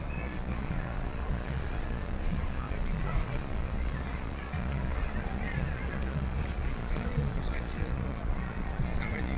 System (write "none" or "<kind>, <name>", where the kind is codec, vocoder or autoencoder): vocoder, Vocos